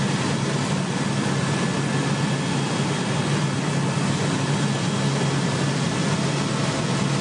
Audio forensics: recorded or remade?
recorded